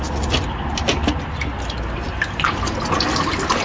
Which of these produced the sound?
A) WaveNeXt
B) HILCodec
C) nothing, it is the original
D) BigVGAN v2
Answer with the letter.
C